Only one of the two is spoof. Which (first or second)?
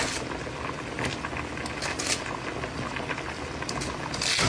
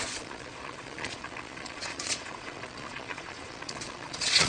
second